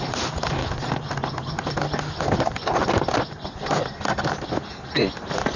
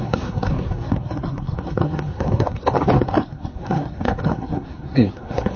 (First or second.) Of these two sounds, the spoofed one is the second